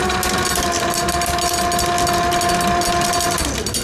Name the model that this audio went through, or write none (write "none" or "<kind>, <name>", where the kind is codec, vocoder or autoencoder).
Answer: none